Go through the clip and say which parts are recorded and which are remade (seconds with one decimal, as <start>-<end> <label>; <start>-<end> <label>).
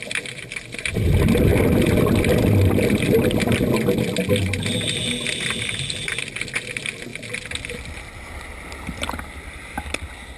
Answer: 0.0-10.4 recorded